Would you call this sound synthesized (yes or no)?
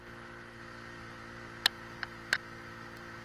no